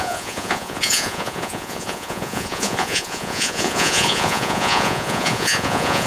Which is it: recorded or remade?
remade